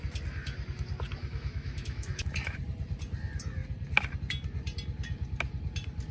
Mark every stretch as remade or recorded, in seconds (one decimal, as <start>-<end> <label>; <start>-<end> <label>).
0.0-1.2 recorded; 1.2-2.6 remade; 2.6-6.1 recorded